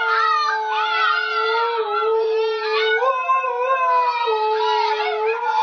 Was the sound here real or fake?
real